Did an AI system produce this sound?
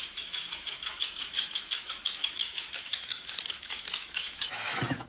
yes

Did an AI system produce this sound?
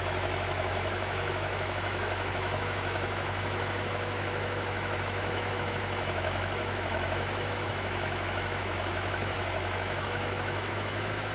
yes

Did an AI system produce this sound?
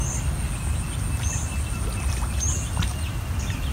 no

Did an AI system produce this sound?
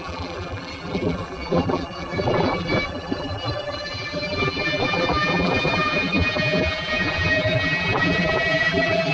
yes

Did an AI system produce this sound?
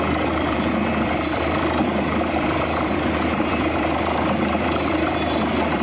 yes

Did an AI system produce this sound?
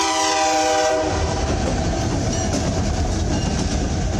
yes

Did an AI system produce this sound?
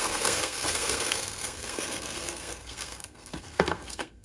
yes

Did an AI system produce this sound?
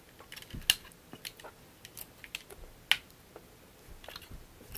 no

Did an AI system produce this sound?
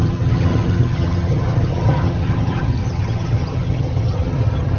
yes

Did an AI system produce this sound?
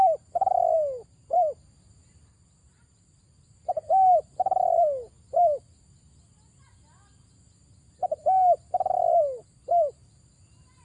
no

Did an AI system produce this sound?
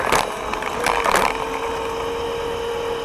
no